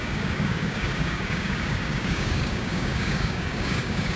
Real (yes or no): no